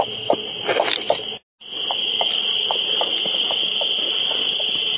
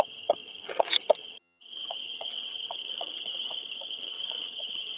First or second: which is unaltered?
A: first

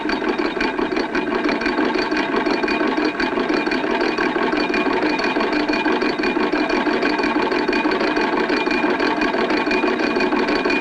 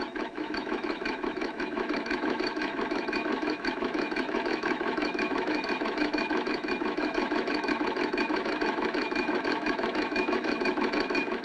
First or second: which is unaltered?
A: first